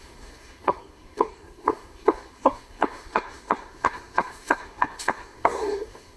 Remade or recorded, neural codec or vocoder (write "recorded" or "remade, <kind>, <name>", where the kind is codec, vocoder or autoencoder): remade, codec, SNAC